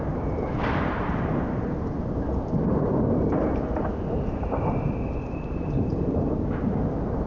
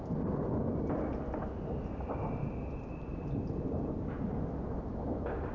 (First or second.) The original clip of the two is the second